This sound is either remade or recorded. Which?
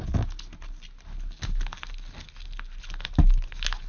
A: recorded